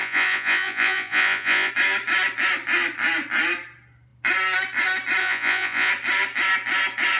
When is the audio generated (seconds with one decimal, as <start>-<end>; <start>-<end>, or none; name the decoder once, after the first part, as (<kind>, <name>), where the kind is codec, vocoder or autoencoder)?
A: 0.0-1.7 (vocoder, Vocos); 5.2-5.9

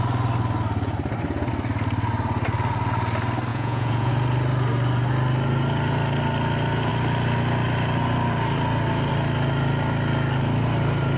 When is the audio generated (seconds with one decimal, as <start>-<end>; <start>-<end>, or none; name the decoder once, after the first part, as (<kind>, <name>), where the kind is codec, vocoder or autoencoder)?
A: 3.5-4.1 (vocoder, Vocos)

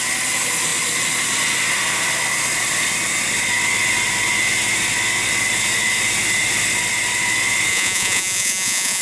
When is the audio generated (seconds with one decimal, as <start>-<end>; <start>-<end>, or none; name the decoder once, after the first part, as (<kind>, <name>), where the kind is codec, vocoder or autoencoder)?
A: 7.7-9.0 (vocoder, Vocos)

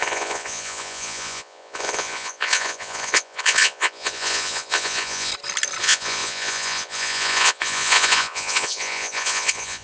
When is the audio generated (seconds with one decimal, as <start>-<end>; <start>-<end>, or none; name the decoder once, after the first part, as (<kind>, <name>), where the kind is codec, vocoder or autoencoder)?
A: 0.0-5.3 (vocoder, Vocos); 5.8-9.8

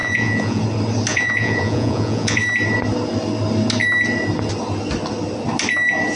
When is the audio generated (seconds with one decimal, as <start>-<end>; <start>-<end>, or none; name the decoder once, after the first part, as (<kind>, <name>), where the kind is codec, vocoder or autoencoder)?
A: 0.0-0.6 (vocoder, Vocos); 1.1-2.4

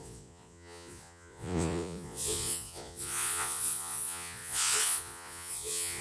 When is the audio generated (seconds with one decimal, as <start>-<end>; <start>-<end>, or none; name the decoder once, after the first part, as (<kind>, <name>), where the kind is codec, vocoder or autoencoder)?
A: 0.0-6.0 (vocoder, Vocos)

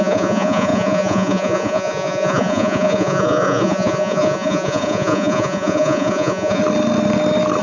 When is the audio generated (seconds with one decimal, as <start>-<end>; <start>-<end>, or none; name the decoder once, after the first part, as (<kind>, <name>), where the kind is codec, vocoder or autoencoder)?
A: 0.0-6.6 (vocoder, Vocos)